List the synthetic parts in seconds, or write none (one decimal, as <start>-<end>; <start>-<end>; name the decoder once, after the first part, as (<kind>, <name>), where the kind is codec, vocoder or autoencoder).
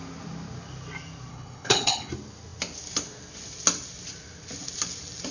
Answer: 1.3-2.1 (codec, HILCodec)